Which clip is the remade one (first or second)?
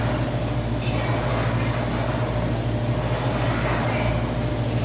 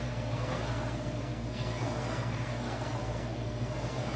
second